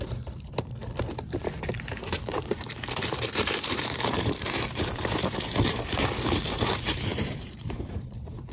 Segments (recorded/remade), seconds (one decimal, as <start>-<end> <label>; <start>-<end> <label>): 0.0-8.5 remade

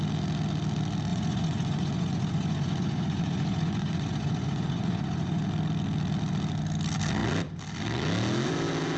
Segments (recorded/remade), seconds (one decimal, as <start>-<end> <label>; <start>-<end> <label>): 0.0-1.1 recorded; 1.1-5.4 remade; 5.4-9.0 recorded

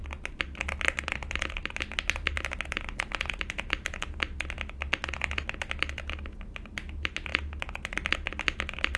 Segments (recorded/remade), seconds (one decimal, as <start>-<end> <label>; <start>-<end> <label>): 0.0-9.0 recorded

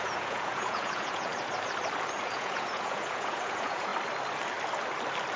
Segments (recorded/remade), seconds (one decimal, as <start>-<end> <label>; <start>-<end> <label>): 0.0-1.3 remade; 1.3-2.2 recorded; 2.2-3.9 remade; 3.9-5.4 recorded